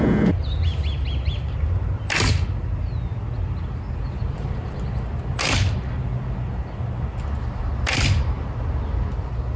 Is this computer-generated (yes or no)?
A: no